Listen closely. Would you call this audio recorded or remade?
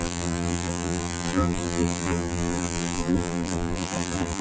remade